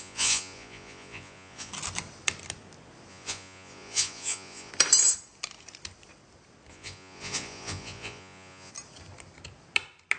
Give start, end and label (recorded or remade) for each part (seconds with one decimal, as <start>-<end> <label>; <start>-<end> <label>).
0.0-1.7 remade; 1.7-3.1 recorded; 3.1-4.7 remade; 4.7-6.7 recorded; 6.7-8.7 remade; 8.7-10.2 recorded